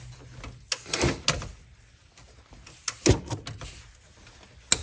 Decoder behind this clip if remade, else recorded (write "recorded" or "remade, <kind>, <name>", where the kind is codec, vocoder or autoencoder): recorded